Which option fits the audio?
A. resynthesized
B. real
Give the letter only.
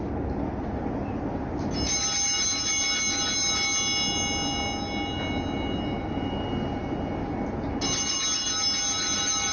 B